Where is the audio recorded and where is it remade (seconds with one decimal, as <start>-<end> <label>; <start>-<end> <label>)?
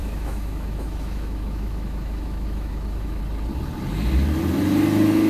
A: 0.0-3.2 remade; 3.2-5.3 recorded